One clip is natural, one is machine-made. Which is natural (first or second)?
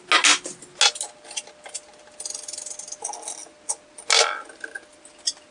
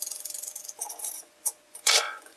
first